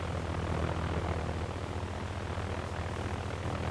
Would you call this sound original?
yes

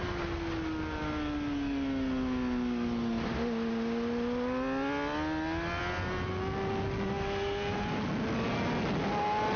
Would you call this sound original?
yes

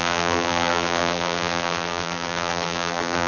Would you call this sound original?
no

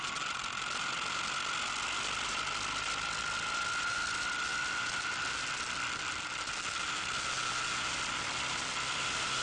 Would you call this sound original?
yes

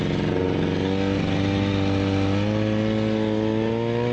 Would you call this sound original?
yes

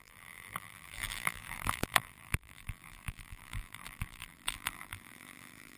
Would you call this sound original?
no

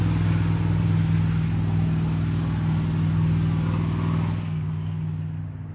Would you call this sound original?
yes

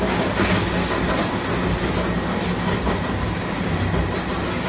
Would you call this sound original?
yes